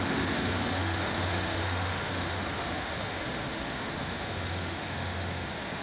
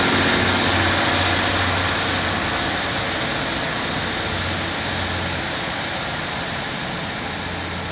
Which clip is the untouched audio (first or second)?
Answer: second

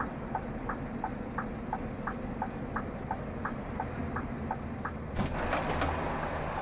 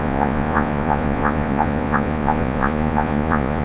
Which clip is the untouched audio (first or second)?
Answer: first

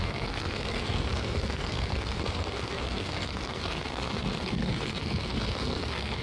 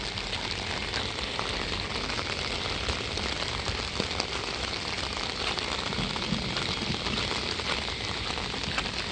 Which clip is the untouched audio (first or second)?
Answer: second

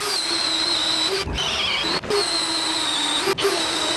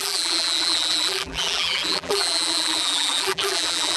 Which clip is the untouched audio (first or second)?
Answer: first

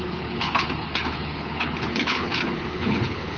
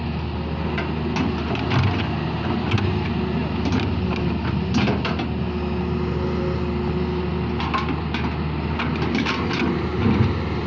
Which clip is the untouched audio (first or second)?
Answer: second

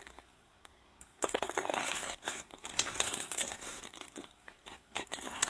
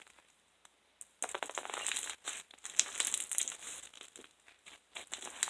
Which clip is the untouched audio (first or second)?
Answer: second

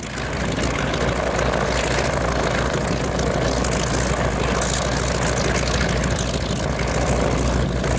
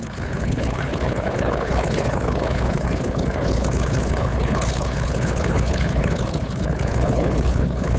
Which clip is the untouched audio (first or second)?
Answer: first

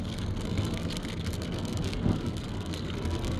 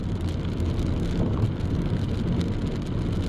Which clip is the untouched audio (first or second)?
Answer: second